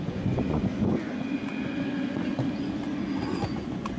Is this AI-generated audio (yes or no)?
yes